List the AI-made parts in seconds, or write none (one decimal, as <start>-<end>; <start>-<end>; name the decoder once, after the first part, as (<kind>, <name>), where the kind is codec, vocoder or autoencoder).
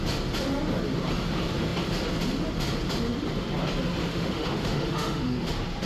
4.1-5.5 (autoencoder, DAC-VAE)